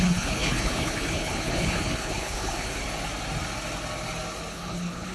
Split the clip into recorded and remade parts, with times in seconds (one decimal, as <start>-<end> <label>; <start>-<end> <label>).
0.0-2.8 remade; 2.8-4.5 recorded; 4.5-5.1 remade